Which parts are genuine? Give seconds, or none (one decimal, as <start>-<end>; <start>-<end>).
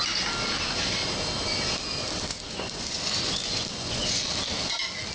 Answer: 0.0-2.3; 4.2-5.1